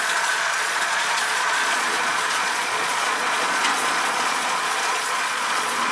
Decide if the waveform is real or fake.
fake